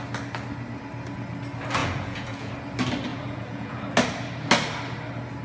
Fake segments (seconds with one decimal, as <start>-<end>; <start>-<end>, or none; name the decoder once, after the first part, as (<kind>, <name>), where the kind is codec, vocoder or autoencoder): 1.8-2.5 (vocoder, Vocos); 3.1-3.8